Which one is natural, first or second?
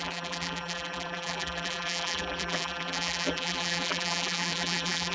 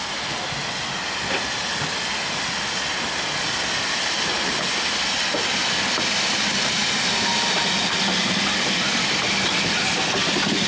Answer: second